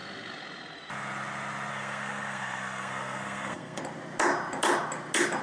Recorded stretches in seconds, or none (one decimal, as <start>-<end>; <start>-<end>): 0.0-1.7; 3.8-5.4